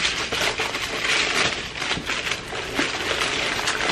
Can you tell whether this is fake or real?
real